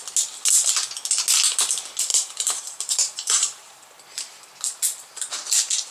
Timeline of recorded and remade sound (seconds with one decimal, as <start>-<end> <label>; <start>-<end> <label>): 0.0-2.1 recorded; 2.1-4.4 remade; 4.4-5.9 recorded